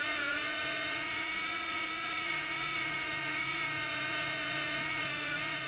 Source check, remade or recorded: remade